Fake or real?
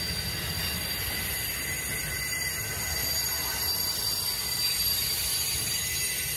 real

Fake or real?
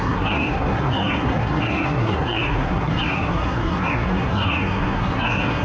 fake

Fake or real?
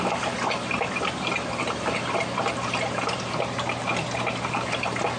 real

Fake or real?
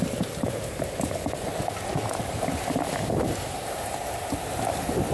real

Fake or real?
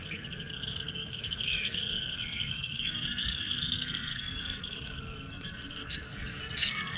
fake